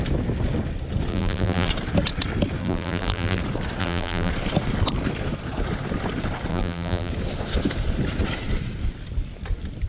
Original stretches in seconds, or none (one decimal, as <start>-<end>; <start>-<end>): 0.0-1.1; 1.7-2.6; 3.4-3.8; 4.3-6.5; 7.1-9.9